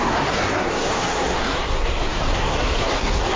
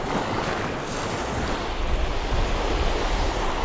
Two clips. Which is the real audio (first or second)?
second